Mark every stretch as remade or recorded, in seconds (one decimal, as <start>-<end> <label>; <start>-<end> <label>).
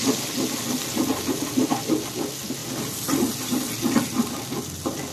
0.0-5.1 recorded